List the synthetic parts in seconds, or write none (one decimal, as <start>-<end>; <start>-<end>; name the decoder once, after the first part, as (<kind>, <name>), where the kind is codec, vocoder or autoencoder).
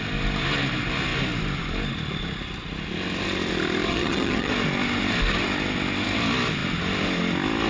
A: 3.9-4.5 (vocoder, HiFi-GAN)